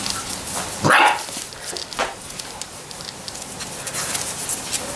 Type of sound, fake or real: real